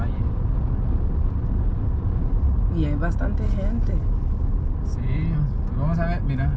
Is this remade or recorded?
recorded